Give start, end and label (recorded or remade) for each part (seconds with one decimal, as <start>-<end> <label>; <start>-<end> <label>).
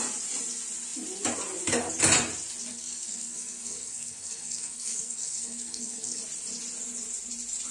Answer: 0.0-2.7 recorded; 2.7-6.2 remade; 6.2-7.7 recorded